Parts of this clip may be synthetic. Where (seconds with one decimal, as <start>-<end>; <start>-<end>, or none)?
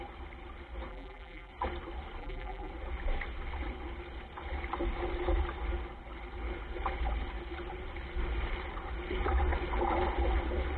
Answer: 0.9-1.5; 2.2-2.7